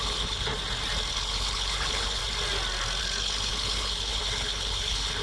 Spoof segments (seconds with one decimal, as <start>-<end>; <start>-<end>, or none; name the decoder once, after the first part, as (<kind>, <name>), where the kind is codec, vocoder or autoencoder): 0.0-0.5 (codec, HILCodec); 1.1-2.2; 3.0-5.2